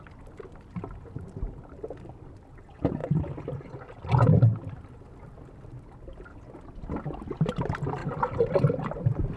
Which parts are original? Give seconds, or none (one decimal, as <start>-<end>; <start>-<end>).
0.0-8.0; 8.9-9.4